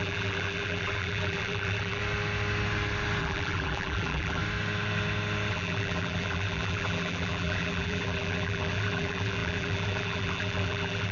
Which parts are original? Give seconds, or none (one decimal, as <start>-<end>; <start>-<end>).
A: 2.0-3.2; 4.4-5.5